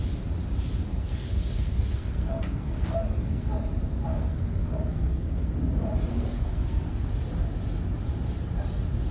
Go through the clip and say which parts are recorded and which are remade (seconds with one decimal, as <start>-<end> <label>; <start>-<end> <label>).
0.0-0.9 recorded; 0.9-3.6 remade; 3.6-4.1 recorded; 4.1-5.5 remade; 5.5-6.1 recorded; 6.1-7.1 remade; 7.1-9.1 recorded